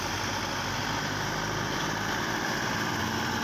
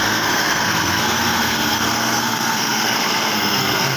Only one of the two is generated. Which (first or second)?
second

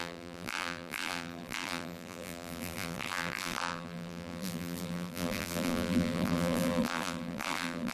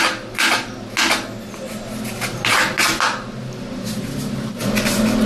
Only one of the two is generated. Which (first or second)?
first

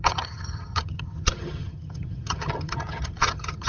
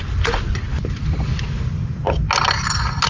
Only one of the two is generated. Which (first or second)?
first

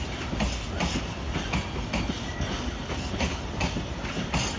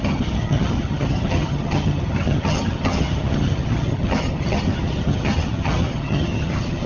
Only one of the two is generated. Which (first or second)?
second